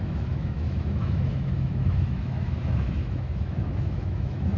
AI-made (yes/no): yes